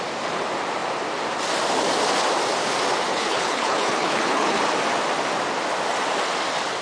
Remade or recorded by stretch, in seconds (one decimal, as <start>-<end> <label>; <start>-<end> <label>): 0.0-3.1 recorded; 3.1-4.6 remade; 4.6-6.8 recorded